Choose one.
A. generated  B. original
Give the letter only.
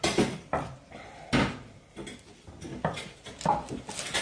B